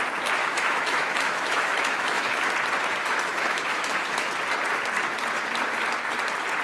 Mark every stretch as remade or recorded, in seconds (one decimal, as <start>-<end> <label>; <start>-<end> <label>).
0.0-0.4 recorded; 0.4-2.4 remade; 2.4-3.0 recorded; 3.0-4.3 remade; 4.3-6.6 recorded